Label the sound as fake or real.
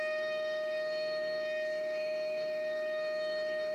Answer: fake